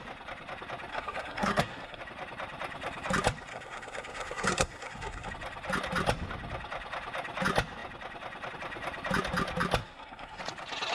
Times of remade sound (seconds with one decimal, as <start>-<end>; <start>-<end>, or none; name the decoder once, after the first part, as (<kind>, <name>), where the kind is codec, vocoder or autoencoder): 0.9-2.0 (codec, SNAC); 3.5-5.3; 9.8-10.4